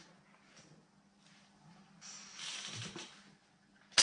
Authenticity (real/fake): real